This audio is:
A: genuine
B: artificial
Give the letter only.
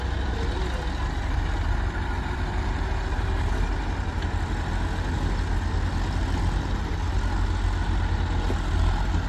A